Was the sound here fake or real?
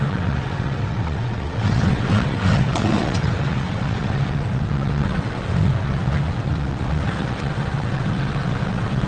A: fake